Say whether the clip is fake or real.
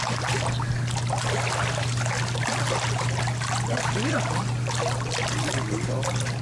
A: real